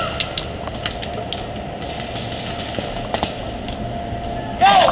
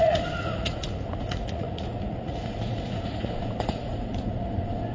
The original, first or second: first